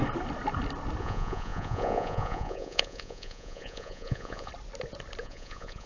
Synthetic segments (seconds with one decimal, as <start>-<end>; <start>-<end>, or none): 1.0-4.5; 5.2-5.9

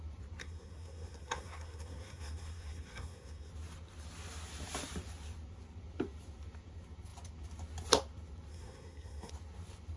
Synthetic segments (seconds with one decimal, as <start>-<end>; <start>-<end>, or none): 0.4-3.5; 8.5-9.3

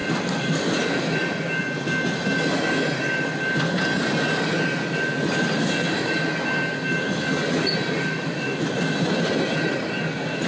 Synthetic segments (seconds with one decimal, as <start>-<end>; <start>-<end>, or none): 0.0-1.2; 7.4-9.3